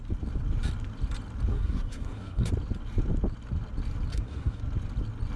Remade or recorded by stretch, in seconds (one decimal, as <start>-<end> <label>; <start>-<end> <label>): 0.0-1.5 recorded; 1.5-2.5 remade; 2.5-4.1 recorded; 4.1-4.6 remade; 4.6-5.4 recorded

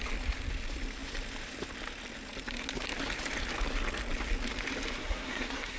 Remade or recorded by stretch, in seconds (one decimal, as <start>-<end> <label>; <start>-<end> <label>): 0.0-5.0 recorded; 5.0-5.8 remade

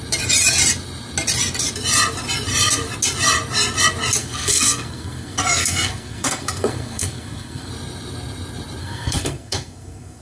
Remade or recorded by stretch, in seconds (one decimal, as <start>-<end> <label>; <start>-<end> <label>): 0.0-4.2 recorded; 4.2-7.7 remade; 7.7-8.8 recorded; 8.8-10.2 remade

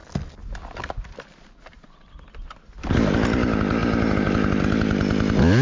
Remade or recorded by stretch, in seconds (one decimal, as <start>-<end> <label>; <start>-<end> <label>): 0.0-5.6 recorded

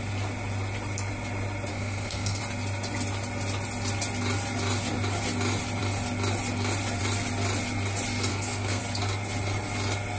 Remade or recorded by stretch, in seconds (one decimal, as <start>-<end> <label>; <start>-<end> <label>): 0.0-1.7 recorded; 1.7-2.4 remade; 2.4-8.3 recorded; 8.3-8.8 remade; 8.8-10.2 recorded

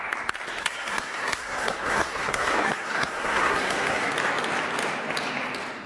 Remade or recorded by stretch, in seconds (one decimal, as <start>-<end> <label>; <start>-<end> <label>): 0.0-0.6 recorded; 0.6-4.1 remade; 4.1-5.9 recorded